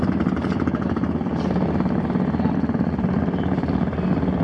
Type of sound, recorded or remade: recorded